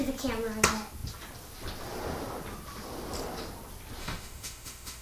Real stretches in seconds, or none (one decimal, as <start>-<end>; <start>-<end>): 0.0-4.0